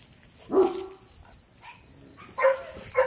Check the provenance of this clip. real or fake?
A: real